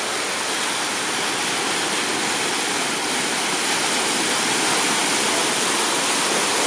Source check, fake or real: real